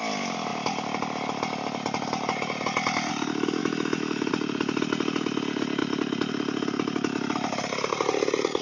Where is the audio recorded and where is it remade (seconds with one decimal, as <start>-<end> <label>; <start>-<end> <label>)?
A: 0.0-3.6 recorded; 3.6-4.3 remade; 4.3-8.6 recorded